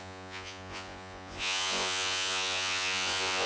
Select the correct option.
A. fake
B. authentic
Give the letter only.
A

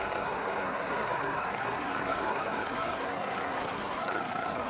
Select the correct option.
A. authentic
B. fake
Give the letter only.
B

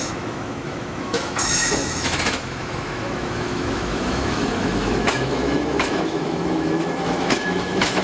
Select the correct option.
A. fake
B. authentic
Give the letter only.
A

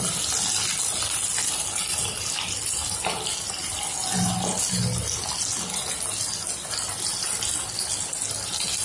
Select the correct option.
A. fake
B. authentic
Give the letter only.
B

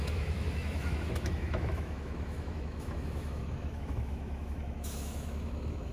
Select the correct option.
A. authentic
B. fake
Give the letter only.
B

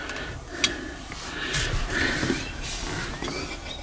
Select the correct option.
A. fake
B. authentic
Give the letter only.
B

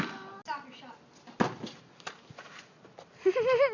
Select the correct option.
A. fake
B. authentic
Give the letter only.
B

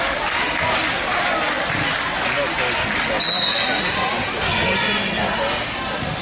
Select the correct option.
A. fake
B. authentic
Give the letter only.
B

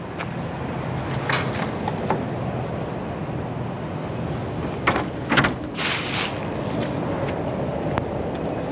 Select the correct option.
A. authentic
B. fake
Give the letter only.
A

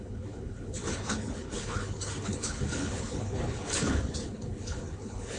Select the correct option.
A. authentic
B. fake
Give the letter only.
B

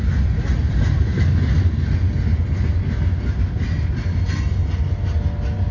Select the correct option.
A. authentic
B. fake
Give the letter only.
A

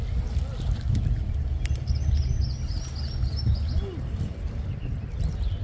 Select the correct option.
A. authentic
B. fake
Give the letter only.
A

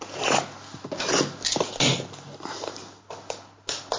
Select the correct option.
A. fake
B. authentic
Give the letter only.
B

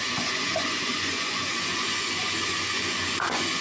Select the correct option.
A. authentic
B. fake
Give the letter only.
B